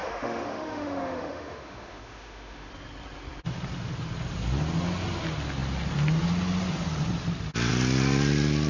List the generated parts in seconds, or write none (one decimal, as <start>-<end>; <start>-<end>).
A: 0.0-2.7